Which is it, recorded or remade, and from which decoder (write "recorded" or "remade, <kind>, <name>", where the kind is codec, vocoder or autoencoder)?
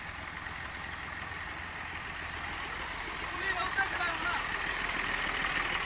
recorded